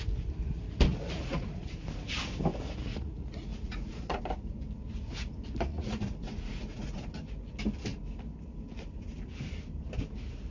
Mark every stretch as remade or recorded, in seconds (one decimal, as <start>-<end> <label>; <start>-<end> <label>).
0.0-0.9 recorded; 0.9-1.7 remade; 1.7-2.9 recorded; 2.9-4.2 remade; 4.2-5.7 recorded; 5.7-7.1 remade; 7.1-10.5 recorded